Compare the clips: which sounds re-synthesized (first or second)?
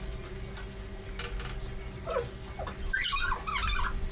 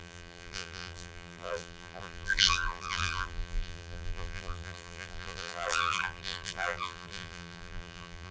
second